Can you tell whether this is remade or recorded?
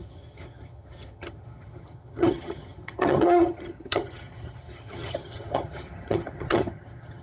remade